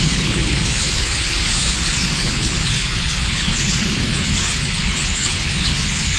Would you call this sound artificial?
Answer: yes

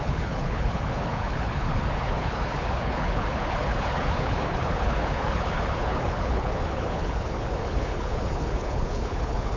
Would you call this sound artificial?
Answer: yes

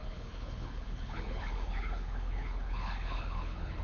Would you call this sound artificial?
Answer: yes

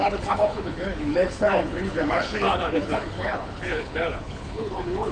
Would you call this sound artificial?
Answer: yes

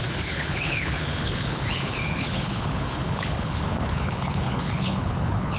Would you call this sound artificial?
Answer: yes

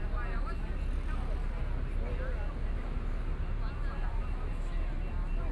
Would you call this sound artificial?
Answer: no